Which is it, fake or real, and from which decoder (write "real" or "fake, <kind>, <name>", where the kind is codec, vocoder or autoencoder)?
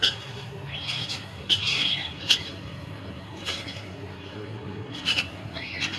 fake, codec, SNAC